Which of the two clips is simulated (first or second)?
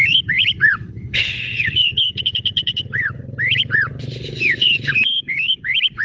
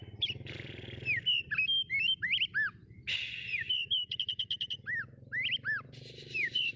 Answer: first